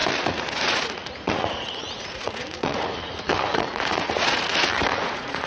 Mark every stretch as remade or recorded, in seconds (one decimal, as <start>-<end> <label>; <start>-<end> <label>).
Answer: 0.0-5.5 remade